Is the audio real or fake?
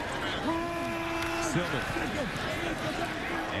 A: real